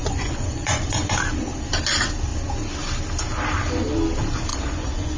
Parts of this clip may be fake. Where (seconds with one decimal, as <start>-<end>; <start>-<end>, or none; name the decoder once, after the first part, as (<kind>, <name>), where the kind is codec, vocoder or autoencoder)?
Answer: 0.0-1.1 (vocoder, Vocos); 4.5-5.2